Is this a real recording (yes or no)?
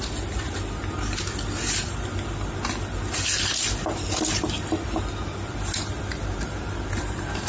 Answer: yes